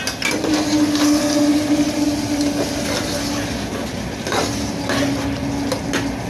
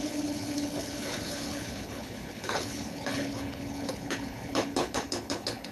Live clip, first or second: first